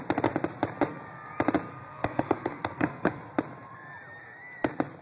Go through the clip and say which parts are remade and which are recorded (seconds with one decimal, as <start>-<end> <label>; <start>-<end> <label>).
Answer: 0.0-1.7 recorded; 1.7-3.2 remade; 3.2-5.0 recorded